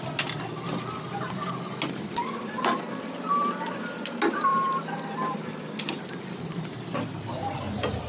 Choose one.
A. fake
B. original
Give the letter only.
B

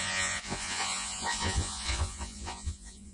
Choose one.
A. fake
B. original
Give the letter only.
A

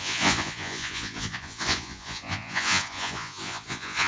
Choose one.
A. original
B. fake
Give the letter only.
B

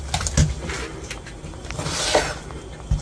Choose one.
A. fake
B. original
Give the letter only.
B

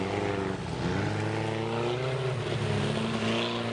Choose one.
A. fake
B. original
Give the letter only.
B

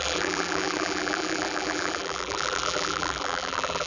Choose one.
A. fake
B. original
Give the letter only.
A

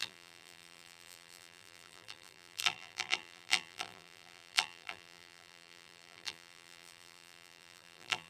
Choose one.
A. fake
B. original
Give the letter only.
A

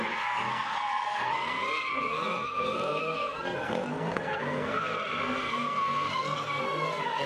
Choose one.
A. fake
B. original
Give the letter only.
A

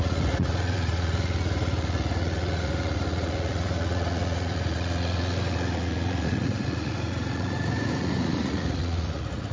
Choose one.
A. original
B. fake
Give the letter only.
B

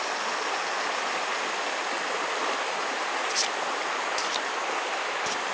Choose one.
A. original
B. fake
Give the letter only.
A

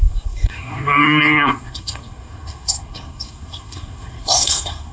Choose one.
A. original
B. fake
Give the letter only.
B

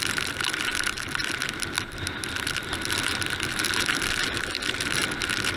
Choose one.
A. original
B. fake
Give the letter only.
A